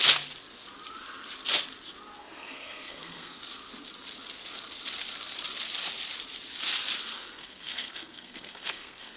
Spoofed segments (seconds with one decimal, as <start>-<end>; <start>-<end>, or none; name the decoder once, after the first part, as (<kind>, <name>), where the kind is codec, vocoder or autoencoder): 2.2-3.4 (codec, SNAC); 7.1-9.2